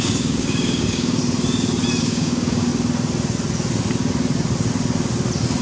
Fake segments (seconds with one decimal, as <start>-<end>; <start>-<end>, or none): 0.0-1.2; 2.0-2.7